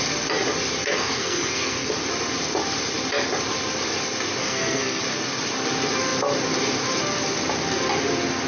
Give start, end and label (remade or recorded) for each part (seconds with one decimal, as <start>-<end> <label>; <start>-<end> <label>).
0.0-0.8 recorded; 0.8-1.9 remade; 1.9-4.4 recorded; 4.4-5.0 remade; 5.0-8.5 recorded